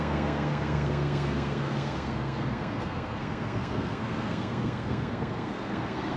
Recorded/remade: remade